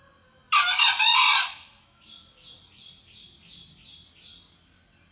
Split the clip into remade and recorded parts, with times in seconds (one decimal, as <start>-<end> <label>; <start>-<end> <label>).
0.0-1.4 recorded; 1.4-2.0 remade; 2.0-5.1 recorded